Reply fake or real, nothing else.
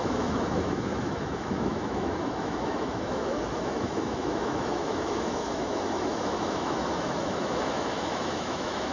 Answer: fake